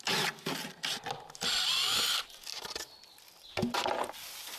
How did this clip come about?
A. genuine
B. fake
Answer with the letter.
A